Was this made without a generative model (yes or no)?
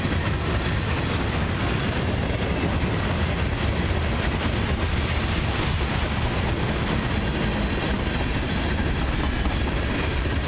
yes